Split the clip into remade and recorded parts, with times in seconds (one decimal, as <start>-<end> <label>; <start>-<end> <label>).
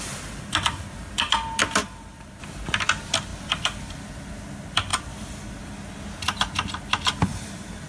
0.0-1.8 recorded; 1.8-2.4 remade; 2.4-4.9 recorded; 4.9-5.5 remade; 5.5-7.3 recorded; 7.3-7.9 remade